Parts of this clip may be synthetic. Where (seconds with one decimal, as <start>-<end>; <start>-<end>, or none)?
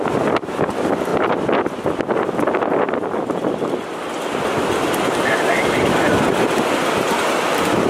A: none